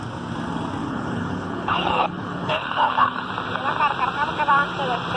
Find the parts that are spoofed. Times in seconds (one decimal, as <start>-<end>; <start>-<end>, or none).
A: 0.8-3.3